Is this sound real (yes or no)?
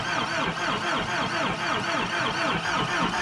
yes